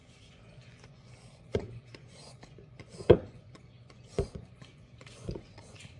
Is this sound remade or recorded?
remade